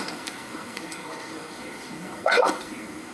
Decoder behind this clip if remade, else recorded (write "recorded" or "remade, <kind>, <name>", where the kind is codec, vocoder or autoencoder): remade, codec, SNAC